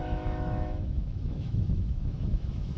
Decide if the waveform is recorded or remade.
remade